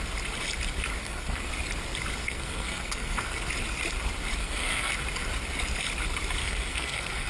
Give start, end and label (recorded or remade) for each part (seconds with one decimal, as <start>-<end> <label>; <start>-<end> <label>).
0.0-1.0 recorded; 1.0-1.5 remade; 1.5-2.2 recorded; 2.2-3.5 remade; 3.5-4.4 recorded; 4.4-4.9 remade; 4.9-6.4 recorded; 6.4-7.3 remade